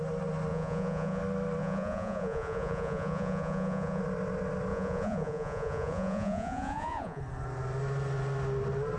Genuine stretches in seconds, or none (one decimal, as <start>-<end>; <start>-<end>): 0.0-0.5; 1.2-1.6; 4.0-4.7; 7.2-9.0